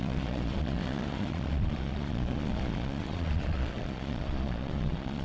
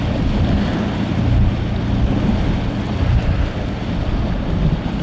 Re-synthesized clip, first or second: first